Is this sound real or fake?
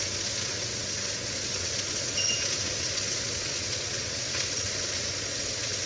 fake